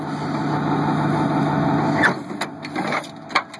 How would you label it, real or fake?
real